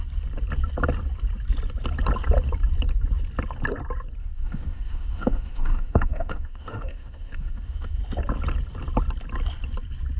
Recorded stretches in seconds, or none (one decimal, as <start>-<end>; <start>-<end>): 0.0-4.2; 8.0-10.2

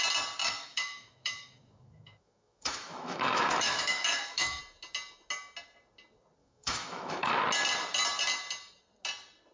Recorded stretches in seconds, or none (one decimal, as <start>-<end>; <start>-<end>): 0.0-0.4; 4.6-6.4; 7.3-9.5

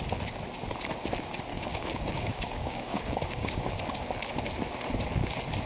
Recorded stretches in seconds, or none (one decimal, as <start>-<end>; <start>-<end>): 0.0-1.5; 3.7-5.7

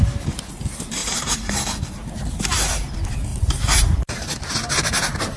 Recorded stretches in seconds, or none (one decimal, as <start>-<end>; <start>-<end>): 0.0-1.0; 2.3-3.3

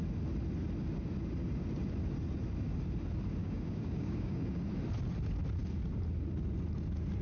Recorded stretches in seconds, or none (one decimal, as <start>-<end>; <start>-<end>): 0.0-3.4; 4.6-7.2

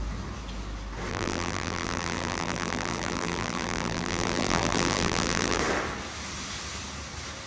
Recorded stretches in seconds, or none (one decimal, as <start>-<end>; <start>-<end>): 0.0-1.1; 5.6-7.5

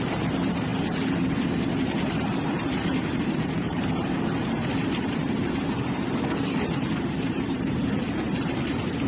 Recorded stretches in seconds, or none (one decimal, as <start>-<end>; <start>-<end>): 0.7-1.7